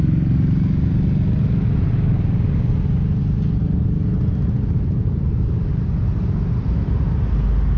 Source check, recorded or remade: recorded